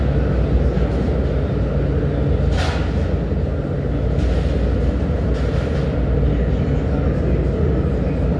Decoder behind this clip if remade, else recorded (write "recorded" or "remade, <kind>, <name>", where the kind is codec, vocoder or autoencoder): recorded